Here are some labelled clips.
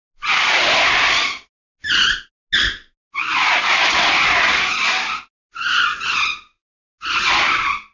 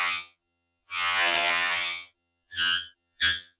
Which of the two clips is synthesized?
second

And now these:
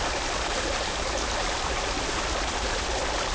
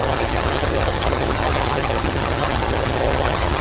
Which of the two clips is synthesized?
second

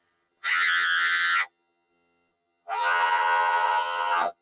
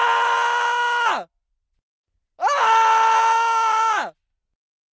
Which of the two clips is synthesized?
first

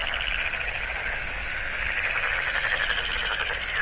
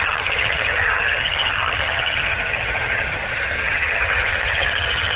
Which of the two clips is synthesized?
second